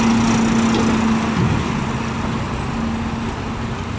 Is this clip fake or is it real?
real